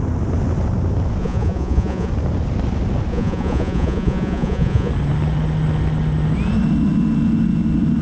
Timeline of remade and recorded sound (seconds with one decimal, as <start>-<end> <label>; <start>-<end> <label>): 0.0-1.2 recorded; 1.2-2.1 remade; 2.1-3.1 recorded; 3.1-4.9 remade; 4.9-8.0 recorded